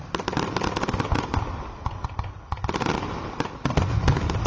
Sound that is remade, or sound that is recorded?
recorded